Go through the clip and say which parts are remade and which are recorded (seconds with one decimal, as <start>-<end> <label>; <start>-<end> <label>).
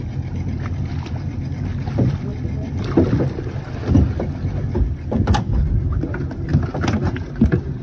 0.0-7.8 recorded